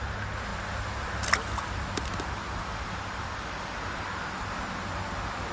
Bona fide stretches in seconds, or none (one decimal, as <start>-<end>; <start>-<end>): 0.0-5.5